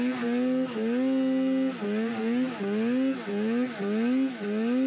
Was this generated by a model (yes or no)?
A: no